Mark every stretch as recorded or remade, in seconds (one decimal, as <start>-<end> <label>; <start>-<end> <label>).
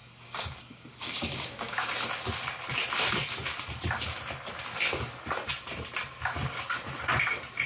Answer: 0.0-1.9 remade; 1.9-7.7 recorded